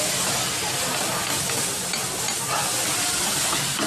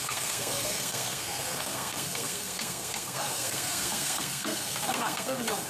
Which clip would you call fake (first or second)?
second